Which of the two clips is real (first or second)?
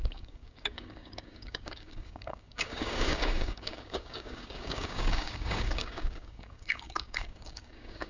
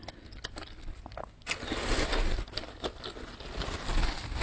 second